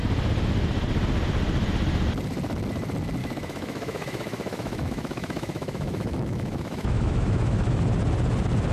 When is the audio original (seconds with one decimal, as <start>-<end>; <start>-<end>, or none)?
0.0-3.2; 7.8-8.7